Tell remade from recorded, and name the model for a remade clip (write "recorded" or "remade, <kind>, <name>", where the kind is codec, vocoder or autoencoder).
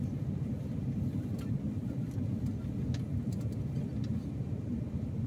recorded